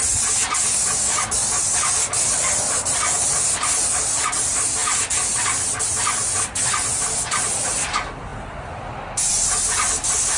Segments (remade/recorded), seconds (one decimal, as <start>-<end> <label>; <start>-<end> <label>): 0.0-10.4 recorded